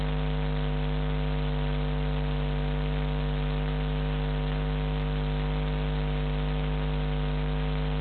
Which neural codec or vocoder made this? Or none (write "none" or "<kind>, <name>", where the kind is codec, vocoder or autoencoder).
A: none